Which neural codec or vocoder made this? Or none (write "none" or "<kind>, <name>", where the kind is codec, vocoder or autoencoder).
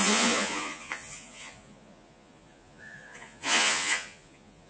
vocoder, Vocos